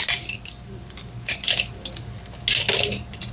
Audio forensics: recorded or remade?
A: recorded